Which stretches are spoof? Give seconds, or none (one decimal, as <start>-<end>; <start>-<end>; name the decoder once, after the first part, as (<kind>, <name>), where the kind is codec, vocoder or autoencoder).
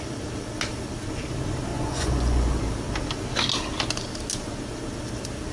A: 1.7-2.6 (vocoder, Vocos)